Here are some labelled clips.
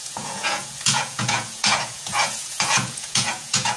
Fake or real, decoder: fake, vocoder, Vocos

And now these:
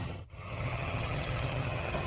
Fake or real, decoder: fake, vocoder, HiFi-GAN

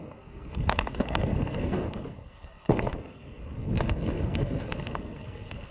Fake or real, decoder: fake, codec, SNAC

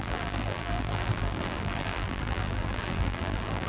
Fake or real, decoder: fake, vocoder, BigVGAN v2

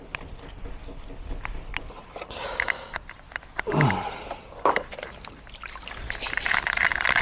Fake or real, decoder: real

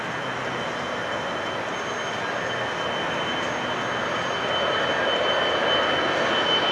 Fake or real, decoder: real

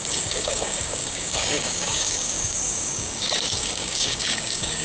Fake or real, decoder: fake, codec, DAC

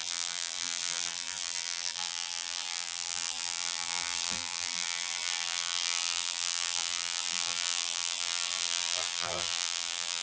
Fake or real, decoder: fake, vocoder, BigVGAN v2